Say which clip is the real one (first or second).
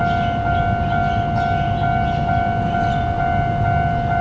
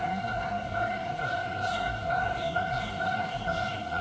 first